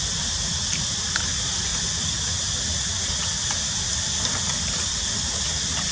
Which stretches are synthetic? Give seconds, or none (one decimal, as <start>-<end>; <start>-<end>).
none